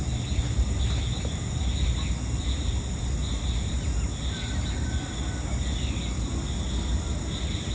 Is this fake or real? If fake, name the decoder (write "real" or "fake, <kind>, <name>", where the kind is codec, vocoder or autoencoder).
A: real